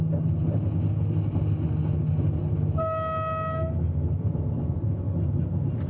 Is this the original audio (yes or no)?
yes